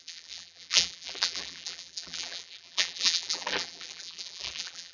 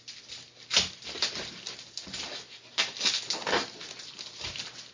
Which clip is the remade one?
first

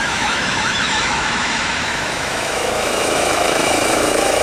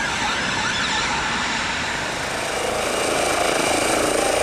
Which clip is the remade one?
first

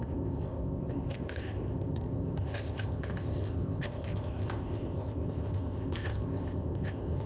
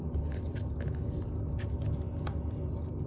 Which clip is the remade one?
first